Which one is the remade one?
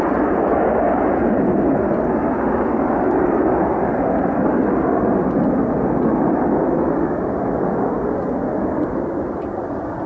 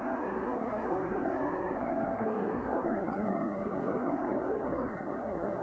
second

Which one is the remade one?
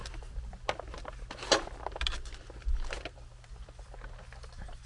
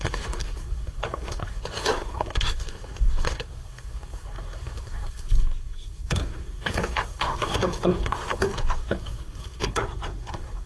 second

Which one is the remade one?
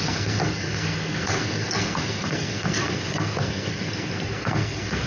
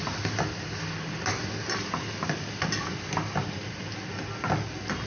first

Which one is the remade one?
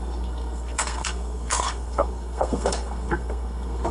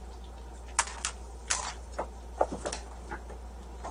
first